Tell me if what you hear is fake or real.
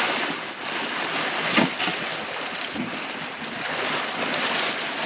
real